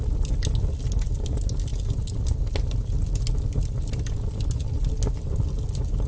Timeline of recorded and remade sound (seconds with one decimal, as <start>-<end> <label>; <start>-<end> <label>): 0.0-6.1 recorded

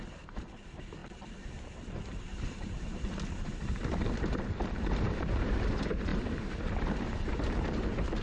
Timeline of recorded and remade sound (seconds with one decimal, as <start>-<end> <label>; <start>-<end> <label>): 0.0-8.2 remade

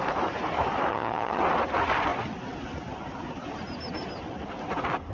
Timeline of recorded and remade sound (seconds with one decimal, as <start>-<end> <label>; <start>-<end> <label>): 0.0-0.9 recorded; 0.9-1.4 remade; 1.4-5.1 recorded

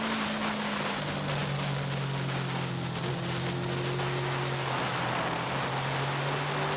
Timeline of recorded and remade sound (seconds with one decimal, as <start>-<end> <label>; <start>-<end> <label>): 0.0-6.8 recorded

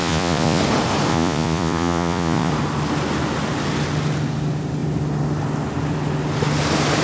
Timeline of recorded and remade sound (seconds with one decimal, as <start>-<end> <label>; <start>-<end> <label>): 0.0-0.6 remade; 0.6-1.1 recorded; 1.1-2.5 remade; 2.5-7.0 recorded

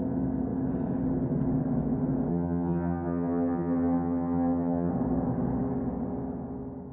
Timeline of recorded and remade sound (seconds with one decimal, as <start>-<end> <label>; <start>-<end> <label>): 0.0-2.3 recorded; 2.3-4.9 remade; 4.9-6.9 recorded